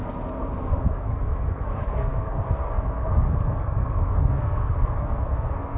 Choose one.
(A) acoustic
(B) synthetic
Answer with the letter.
B